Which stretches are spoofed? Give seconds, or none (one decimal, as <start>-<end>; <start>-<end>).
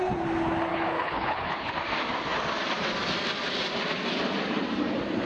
0.7-1.7